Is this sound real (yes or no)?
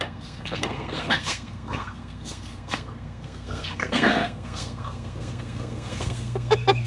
no